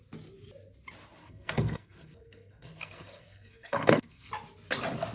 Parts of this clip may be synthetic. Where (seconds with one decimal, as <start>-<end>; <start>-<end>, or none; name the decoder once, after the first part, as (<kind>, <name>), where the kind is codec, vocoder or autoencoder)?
1.2-4.3 (codec, SNAC)